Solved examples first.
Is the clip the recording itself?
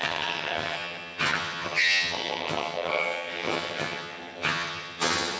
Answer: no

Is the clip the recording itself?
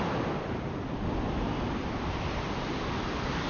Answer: yes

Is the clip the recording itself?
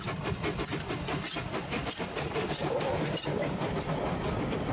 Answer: yes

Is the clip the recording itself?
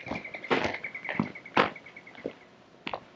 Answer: yes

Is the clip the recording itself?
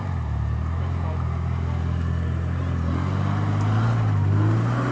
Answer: yes